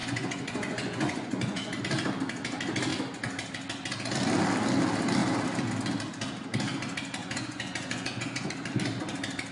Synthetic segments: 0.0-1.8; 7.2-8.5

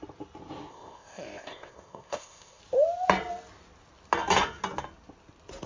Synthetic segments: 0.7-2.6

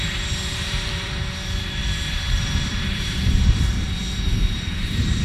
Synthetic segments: 0.0-5.2